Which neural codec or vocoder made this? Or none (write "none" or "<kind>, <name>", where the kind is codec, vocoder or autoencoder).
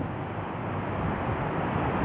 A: none